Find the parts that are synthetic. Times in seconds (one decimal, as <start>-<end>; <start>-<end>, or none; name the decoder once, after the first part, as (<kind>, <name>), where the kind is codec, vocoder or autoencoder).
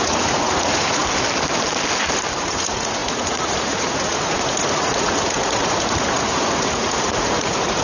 0.0-1.0 (vocoder, Vocos); 2.4-7.8